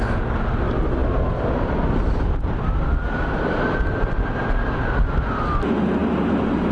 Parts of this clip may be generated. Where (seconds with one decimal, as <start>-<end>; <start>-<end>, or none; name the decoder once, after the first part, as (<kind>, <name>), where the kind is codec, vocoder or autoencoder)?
none